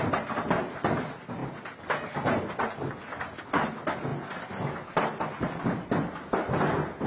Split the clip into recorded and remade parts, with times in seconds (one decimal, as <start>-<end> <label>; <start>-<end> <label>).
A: 0.0-7.1 recorded